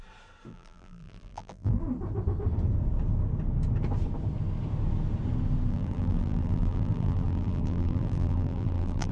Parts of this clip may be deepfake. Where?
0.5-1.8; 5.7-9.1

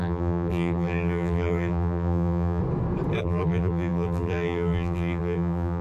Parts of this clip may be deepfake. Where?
0.0-2.6; 3.2-5.8

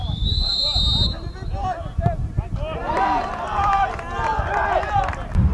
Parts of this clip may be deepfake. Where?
0.0-0.8; 2.8-3.3